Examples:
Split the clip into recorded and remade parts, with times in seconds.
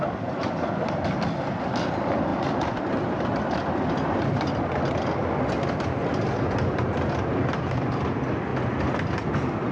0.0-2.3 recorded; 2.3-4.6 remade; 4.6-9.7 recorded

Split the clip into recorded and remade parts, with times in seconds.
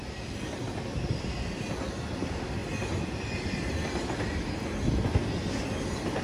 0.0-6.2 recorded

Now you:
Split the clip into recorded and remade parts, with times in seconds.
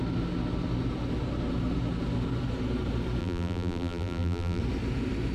0.0-3.2 recorded; 3.2-4.6 remade; 4.6-5.3 recorded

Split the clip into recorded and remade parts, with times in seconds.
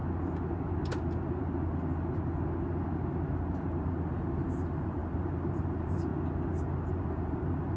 0.0-3.8 recorded; 3.8-6.1 remade; 6.1-6.9 recorded; 6.9-7.8 remade